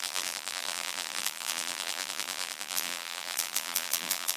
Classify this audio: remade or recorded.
remade